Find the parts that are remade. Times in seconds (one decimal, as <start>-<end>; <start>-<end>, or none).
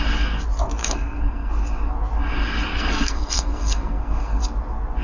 0.8-1.5; 2.7-4.4